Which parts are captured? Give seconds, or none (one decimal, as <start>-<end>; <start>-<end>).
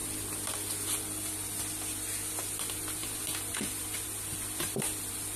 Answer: 0.0-5.4